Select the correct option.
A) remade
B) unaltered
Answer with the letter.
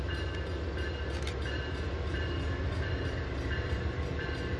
B